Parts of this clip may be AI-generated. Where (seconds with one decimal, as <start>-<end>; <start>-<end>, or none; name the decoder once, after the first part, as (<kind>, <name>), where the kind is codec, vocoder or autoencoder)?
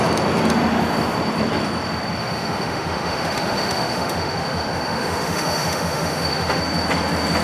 2.2-6.6 (autoencoder, DAC-VAE)